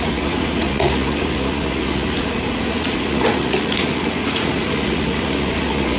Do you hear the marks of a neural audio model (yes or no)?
yes